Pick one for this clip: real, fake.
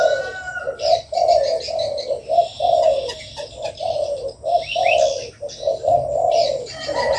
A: real